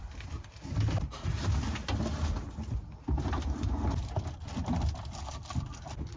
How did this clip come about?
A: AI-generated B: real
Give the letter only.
B